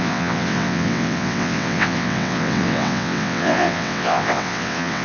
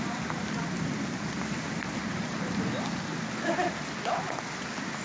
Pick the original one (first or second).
second